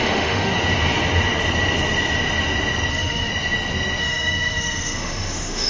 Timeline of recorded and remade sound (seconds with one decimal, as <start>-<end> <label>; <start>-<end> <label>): 0.0-0.5 remade; 0.5-2.9 recorded; 2.9-3.3 remade; 3.3-4.0 recorded; 4.0-5.7 remade

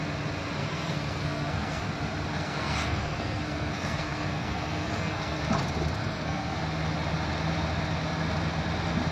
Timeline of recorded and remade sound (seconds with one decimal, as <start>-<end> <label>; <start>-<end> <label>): 0.0-0.6 recorded; 0.6-1.8 remade; 1.8-2.3 recorded; 2.3-5.4 remade; 5.4-6.0 recorded; 6.0-6.6 remade; 6.6-9.1 recorded

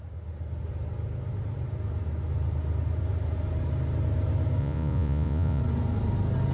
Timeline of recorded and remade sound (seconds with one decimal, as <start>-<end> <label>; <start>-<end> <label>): 0.0-4.6 recorded; 4.6-5.6 remade; 5.6-6.5 recorded

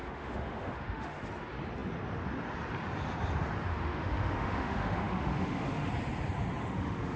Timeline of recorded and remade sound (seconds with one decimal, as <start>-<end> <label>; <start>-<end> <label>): 0.0-1.2 remade; 1.2-3.7 recorded; 3.7-5.9 remade; 5.9-6.6 recorded; 6.6-7.2 remade